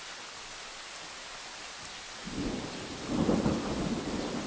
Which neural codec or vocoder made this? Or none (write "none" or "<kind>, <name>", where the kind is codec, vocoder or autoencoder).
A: none